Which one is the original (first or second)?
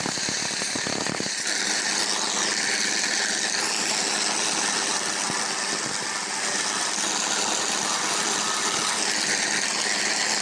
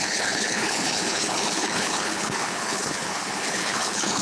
first